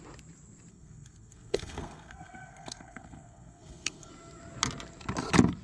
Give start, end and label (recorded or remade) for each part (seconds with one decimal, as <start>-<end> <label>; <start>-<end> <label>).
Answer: 0.0-0.7 recorded; 0.7-4.1 remade; 4.1-5.6 recorded

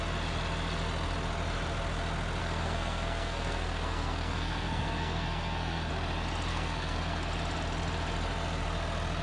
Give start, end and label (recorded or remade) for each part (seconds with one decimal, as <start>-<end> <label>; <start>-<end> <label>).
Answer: 0.0-2.4 recorded; 2.4-5.9 remade; 5.9-6.5 recorded; 6.5-7.3 remade; 7.3-9.2 recorded